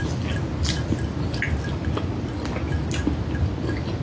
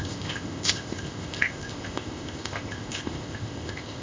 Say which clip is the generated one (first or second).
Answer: second